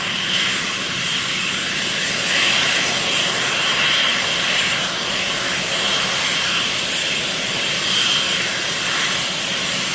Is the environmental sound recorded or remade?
recorded